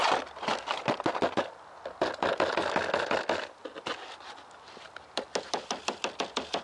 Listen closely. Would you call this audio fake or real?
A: real